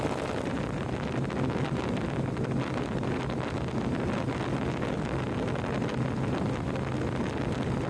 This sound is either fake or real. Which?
real